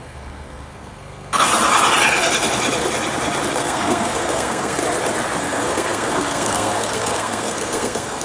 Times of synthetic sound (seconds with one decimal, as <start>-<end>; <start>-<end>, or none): 0.0-1.5; 3.5-4.8; 5.4-8.2